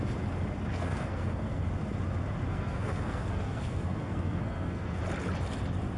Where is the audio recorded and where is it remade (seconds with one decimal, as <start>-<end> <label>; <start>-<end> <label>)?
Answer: 0.0-0.7 recorded; 0.7-1.6 remade; 1.6-2.5 recorded; 2.5-5.0 remade; 5.0-6.0 recorded